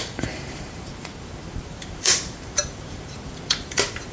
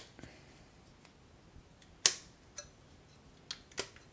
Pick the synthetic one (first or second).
first